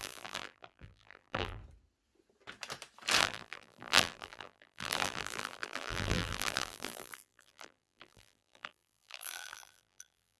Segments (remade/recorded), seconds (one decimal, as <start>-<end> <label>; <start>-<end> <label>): 0.0-1.6 remade; 1.6-3.2 recorded; 3.2-10.4 remade